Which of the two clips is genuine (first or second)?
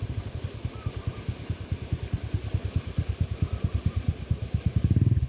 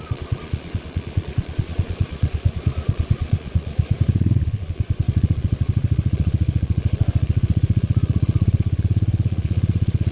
first